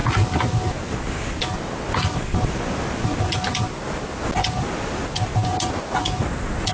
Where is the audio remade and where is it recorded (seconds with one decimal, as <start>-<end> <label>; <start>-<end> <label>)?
0.0-6.7 recorded